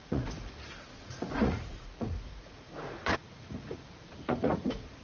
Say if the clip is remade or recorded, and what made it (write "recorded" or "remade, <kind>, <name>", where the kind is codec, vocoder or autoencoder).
remade, vocoder, Vocos